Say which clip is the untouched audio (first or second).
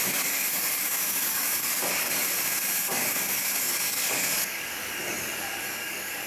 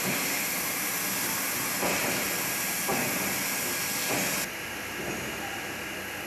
second